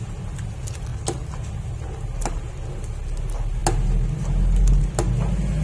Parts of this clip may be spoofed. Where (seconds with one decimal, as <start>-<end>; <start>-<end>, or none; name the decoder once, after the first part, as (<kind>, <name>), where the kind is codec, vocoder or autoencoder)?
none